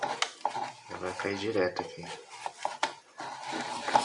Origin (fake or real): real